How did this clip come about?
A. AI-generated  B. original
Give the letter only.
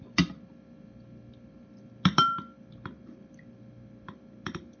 B